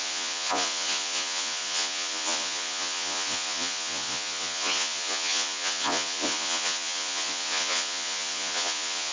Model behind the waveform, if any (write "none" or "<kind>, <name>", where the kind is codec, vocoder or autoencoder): vocoder, Vocos